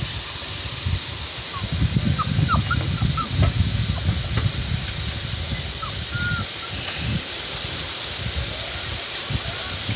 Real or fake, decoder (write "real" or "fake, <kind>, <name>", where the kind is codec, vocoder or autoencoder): real